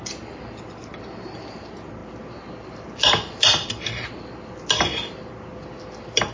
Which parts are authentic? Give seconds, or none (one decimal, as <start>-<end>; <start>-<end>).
0.0-6.3